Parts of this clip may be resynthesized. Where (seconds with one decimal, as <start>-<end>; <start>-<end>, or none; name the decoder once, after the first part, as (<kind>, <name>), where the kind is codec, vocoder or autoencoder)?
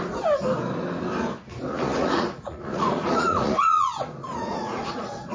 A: 1.7-5.3 (vocoder, Vocos)